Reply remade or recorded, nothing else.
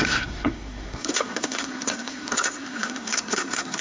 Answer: remade